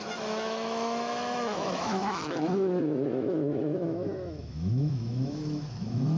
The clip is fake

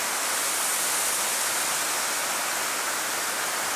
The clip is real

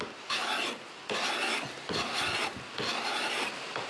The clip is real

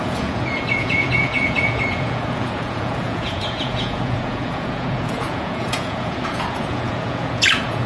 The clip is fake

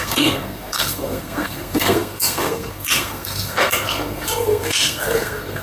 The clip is fake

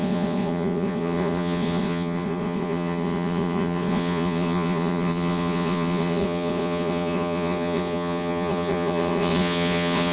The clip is fake